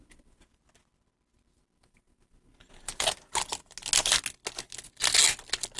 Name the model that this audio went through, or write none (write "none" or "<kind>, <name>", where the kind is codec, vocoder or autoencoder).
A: none